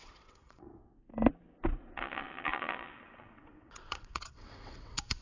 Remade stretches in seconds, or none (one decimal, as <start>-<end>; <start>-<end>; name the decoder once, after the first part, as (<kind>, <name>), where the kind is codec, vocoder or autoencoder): 0.0-0.8 (vocoder, WaveNeXt); 1.9-5.2